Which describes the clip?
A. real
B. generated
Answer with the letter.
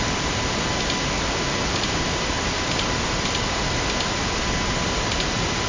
A